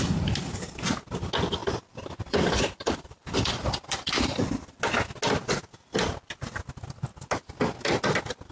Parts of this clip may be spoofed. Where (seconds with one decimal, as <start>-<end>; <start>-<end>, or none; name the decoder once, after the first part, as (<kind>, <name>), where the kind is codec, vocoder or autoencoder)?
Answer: 1.6-4.4 (vocoder, BigVGAN v2)